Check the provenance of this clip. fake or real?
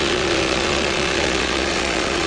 fake